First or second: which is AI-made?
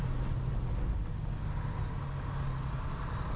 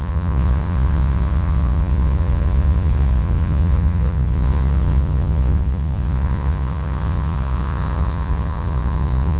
second